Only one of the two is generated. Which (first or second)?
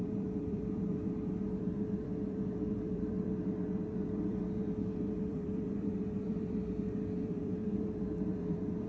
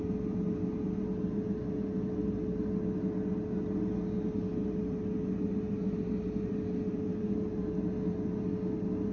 first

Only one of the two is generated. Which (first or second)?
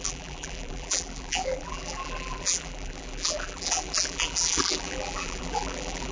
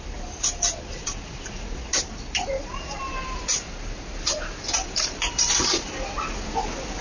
first